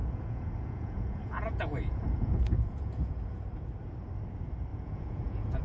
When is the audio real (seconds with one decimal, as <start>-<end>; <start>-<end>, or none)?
3.4-4.7